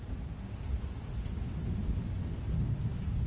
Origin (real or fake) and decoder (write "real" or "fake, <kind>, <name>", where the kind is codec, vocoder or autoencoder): real